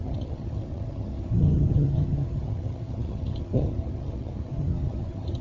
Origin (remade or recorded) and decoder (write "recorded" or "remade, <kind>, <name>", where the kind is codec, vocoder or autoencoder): remade, vocoder, HiFi-GAN